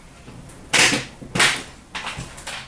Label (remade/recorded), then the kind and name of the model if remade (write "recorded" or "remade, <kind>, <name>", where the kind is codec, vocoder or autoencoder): recorded